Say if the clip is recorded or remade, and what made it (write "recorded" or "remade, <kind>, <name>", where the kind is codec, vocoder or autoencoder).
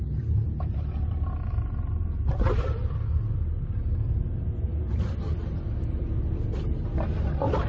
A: recorded